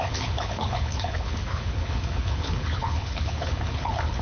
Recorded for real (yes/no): no